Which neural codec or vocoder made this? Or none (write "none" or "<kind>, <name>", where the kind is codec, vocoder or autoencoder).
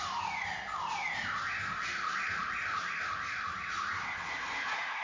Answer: none